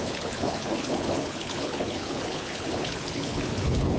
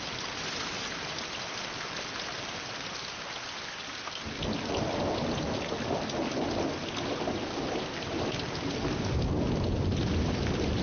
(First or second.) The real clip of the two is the second